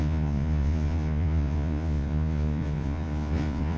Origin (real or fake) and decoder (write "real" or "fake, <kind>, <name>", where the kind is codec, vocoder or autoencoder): fake, vocoder, Vocos